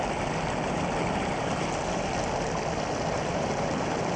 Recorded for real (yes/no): yes